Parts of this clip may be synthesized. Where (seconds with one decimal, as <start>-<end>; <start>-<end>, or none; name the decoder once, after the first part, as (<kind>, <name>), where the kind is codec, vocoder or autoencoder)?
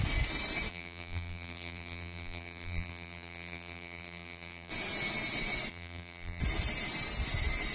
0.7-4.7 (vocoder, BigVGAN v2); 5.7-6.4